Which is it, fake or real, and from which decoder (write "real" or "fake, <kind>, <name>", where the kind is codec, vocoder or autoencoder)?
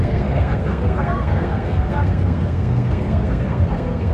fake, codec, SNAC